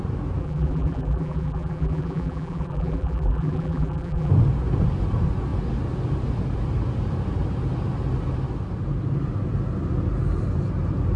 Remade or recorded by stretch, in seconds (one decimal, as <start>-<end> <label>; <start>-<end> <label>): 0.0-0.4 recorded; 0.4-4.3 remade; 4.3-11.2 recorded